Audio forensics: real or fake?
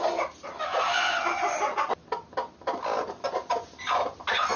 real